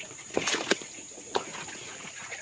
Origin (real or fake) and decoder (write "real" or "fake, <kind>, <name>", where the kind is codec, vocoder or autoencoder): fake, vocoder, Vocos